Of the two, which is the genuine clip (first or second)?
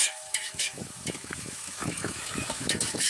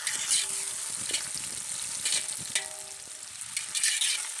second